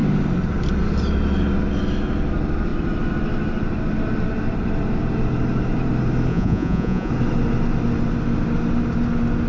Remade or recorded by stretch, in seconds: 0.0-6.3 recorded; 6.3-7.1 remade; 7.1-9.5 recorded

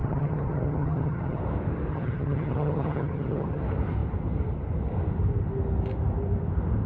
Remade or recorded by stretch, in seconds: 0.0-1.4 remade; 1.4-1.9 recorded; 1.9-3.6 remade; 3.6-6.9 recorded

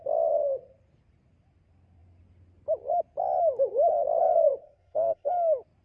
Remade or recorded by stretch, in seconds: 0.0-4.6 recorded; 4.6-5.3 remade; 5.3-5.8 recorded

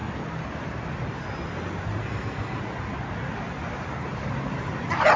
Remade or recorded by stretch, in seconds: 0.0-2.0 recorded; 2.0-2.6 remade; 2.6-5.2 recorded

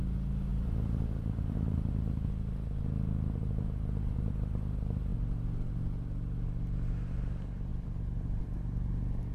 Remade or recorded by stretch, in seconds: 0.0-0.5 recorded; 0.5-1.9 remade; 1.9-7.7 recorded; 7.7-8.4 remade; 8.4-9.3 recorded

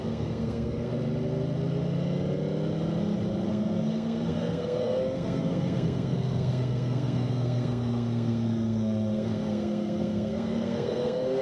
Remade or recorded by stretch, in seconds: 0.0-0.9 remade; 0.9-3.5 recorded; 3.5-11.4 remade